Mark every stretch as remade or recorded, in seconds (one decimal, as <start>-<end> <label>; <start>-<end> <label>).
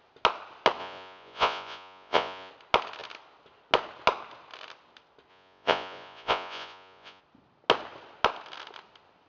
0.0-0.8 recorded; 0.8-2.5 remade; 2.5-5.3 recorded; 5.3-7.2 remade; 7.2-9.3 recorded